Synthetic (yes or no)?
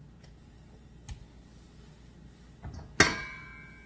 no